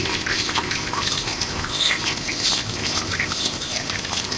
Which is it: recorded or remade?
remade